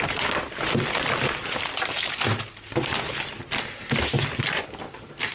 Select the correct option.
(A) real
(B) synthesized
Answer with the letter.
A